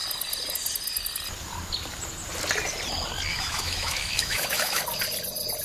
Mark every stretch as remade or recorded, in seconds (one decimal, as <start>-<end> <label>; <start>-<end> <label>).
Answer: 0.0-3.3 recorded; 3.3-4.8 remade; 4.8-5.6 recorded